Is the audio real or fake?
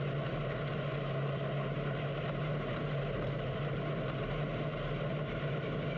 real